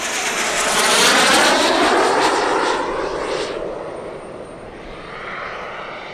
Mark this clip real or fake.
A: real